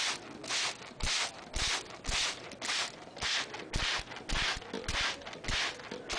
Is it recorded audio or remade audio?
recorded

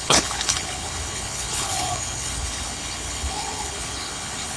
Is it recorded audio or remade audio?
remade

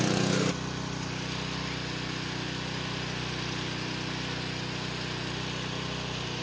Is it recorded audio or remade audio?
recorded